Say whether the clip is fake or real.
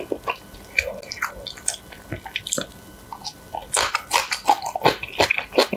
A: real